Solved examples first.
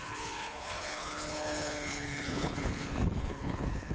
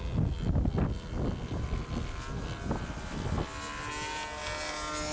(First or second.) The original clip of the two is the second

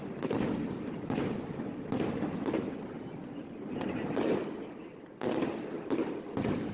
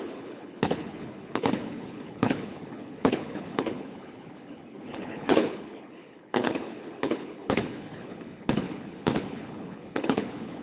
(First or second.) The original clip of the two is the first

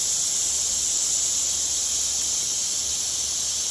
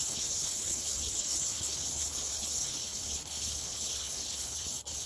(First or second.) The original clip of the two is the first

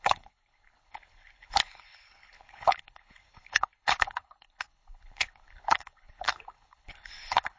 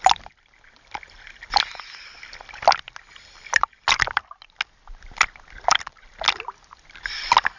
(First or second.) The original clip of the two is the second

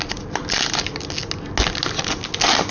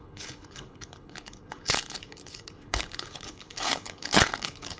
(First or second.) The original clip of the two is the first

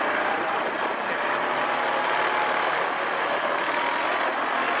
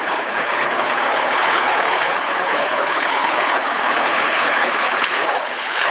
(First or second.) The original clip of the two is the first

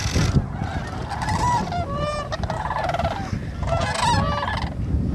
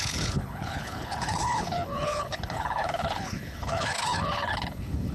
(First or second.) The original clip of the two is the first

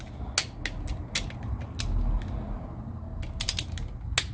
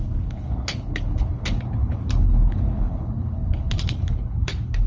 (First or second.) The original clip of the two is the first